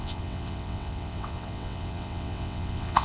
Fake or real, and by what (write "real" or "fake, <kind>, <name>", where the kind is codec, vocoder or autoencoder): fake, vocoder, WaveNeXt